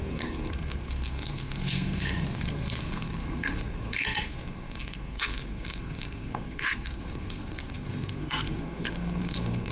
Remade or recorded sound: remade